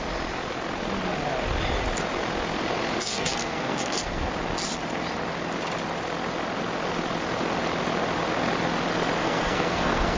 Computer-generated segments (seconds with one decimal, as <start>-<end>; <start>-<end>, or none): 3.0-4.3; 9.2-10.2